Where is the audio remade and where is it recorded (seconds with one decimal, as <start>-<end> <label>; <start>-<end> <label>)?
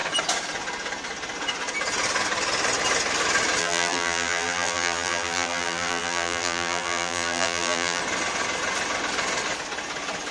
0.0-3.6 recorded; 3.6-8.0 remade; 8.0-10.3 recorded